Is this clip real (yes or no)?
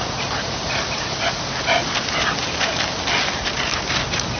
yes